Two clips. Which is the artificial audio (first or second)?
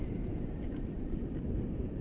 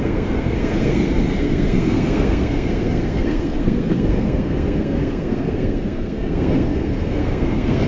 second